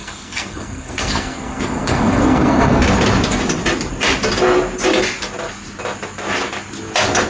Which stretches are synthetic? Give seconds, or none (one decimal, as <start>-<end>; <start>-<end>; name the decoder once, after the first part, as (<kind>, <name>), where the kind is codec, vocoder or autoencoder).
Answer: 0.0-2.8 (codec, SNAC)